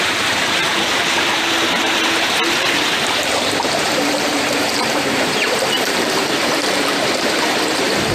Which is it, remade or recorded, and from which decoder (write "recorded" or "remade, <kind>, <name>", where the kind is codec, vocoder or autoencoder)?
remade, vocoder, BigVGAN v2